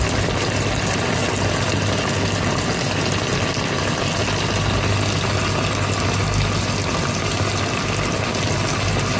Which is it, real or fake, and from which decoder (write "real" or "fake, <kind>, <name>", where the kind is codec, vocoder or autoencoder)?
real